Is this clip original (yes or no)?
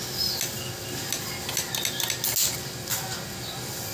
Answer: yes